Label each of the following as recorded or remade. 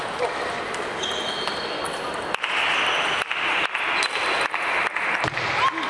recorded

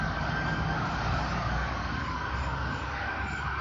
remade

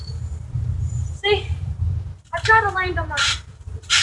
remade